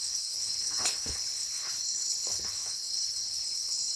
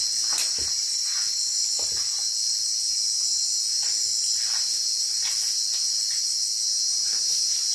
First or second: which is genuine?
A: second